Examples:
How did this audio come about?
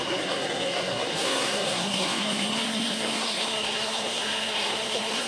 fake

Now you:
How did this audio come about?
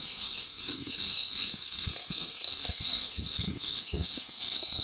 fake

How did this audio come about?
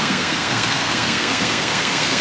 fake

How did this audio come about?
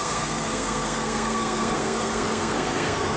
fake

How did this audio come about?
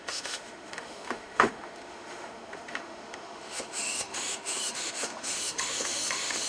fake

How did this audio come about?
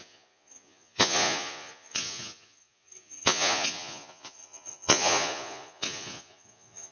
fake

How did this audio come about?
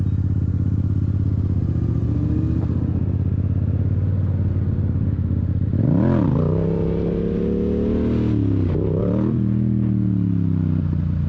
real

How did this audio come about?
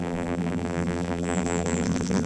fake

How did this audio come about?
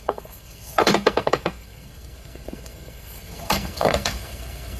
fake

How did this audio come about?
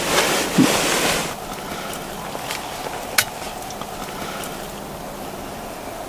real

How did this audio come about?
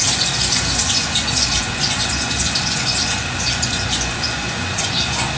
fake